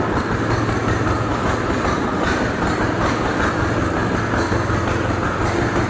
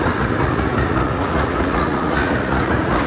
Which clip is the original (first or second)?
first